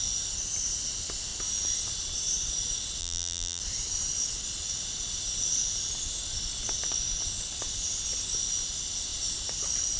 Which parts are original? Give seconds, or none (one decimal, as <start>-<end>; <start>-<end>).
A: 0.0-3.0; 3.6-10.0